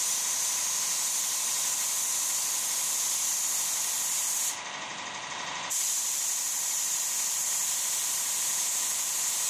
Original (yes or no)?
yes